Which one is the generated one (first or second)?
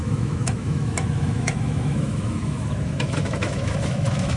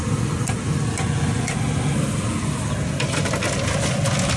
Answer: first